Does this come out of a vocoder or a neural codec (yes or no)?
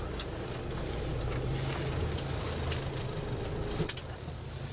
no